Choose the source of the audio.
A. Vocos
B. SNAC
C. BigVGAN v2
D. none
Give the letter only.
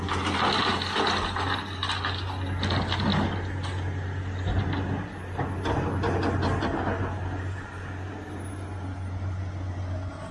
D